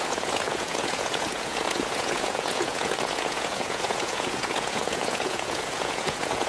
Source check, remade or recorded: remade